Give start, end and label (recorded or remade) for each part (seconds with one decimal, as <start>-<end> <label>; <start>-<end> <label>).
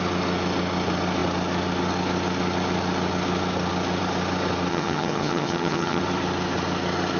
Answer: 0.0-4.7 recorded; 4.7-6.0 remade; 6.0-7.2 recorded